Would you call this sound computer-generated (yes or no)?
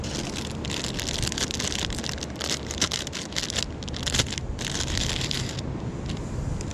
no